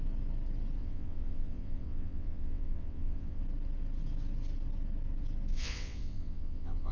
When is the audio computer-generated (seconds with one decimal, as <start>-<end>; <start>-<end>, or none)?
0.8-3.4; 5.5-6.9